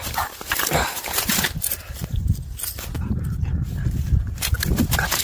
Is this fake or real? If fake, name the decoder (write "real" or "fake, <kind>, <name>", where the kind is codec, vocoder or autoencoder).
real